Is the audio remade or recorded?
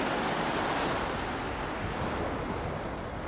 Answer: recorded